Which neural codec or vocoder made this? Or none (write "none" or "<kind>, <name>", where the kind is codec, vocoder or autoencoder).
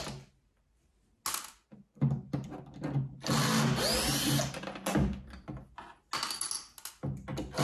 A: none